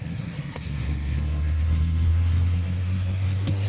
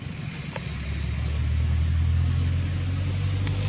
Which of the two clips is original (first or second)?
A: second